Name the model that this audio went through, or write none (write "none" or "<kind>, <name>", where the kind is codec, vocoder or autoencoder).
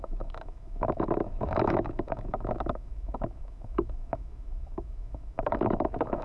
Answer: autoencoder, DAC-VAE